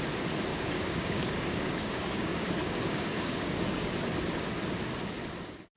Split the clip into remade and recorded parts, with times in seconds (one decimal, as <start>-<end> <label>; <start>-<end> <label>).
0.0-0.5 recorded; 0.5-3.9 remade; 3.9-5.8 recorded